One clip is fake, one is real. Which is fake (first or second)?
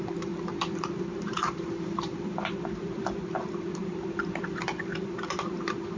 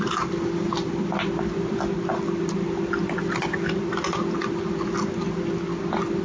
first